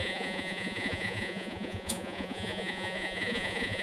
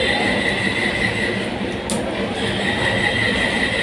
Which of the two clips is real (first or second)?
second